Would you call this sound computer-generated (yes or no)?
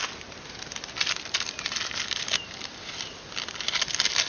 no